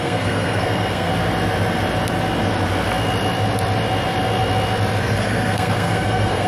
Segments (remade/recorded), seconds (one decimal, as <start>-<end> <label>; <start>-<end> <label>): 0.0-1.1 remade; 1.1-5.0 recorded; 5.0-6.5 remade